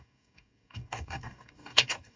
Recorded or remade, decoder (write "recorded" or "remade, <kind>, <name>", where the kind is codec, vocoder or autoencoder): remade, codec, DAC